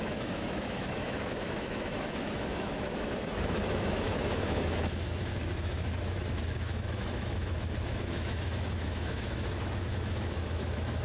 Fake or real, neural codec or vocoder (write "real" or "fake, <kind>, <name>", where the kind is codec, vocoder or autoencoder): fake, autoencoder, DAC-VAE